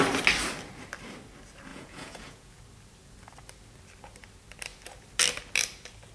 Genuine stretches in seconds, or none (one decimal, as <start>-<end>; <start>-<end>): 0.0-1.7; 2.6-6.1